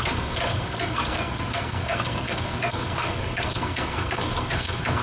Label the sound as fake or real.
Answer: fake